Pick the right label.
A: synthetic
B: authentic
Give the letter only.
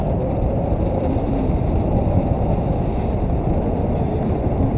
B